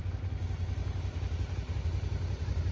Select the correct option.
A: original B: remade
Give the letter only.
A